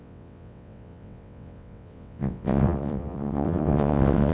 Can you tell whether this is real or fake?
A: fake